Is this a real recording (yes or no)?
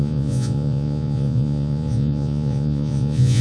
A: no